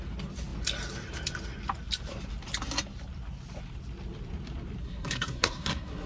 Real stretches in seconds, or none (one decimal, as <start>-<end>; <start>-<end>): 0.0-4.8